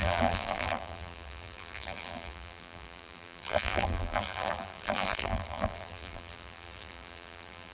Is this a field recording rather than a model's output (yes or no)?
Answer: no